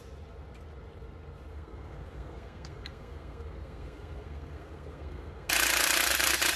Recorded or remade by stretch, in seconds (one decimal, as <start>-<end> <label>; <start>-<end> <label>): 0.0-1.5 recorded; 1.5-5.5 remade; 5.5-6.6 recorded